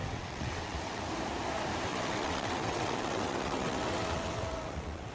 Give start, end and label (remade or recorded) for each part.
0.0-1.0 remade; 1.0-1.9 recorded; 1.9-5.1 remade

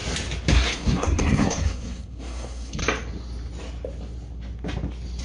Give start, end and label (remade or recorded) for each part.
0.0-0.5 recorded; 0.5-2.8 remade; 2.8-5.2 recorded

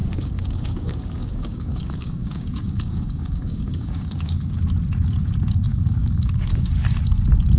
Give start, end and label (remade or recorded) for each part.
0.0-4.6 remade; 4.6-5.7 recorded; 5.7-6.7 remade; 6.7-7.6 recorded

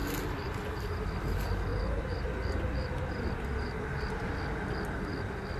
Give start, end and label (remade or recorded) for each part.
0.0-5.6 recorded

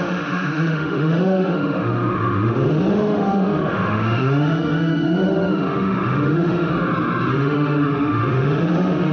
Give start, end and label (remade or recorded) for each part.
0.0-6.7 remade; 6.7-7.3 recorded; 7.3-9.1 remade